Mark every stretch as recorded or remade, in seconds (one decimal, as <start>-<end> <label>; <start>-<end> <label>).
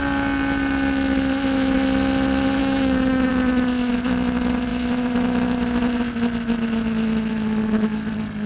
0.0-2.6 recorded; 2.6-3.3 remade; 3.3-8.5 recorded